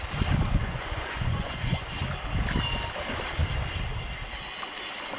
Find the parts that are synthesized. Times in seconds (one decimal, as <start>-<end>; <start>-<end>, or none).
0.6-2.0